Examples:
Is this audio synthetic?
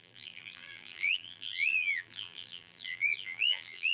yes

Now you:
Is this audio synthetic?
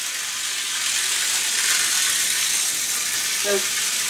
no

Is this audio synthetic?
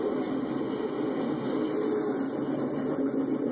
no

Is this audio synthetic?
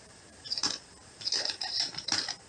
yes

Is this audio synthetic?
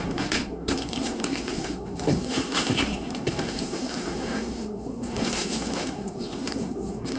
yes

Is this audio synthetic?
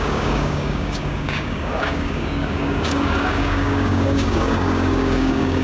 yes